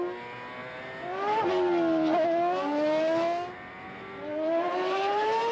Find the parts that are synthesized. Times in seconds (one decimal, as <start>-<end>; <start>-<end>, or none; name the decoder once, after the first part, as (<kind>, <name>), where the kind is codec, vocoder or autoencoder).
none